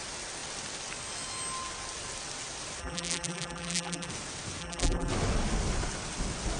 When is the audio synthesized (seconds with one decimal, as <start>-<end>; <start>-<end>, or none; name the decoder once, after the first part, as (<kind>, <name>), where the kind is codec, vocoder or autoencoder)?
2.8-4.1 (vocoder, BigVGAN v2); 4.6-5.1